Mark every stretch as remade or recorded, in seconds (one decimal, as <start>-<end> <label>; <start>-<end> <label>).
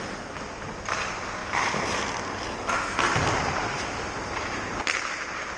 0.0-1.4 remade; 1.4-3.3 recorded; 3.3-5.6 remade